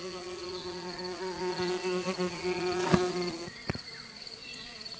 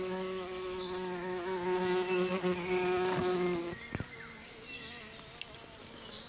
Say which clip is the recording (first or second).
second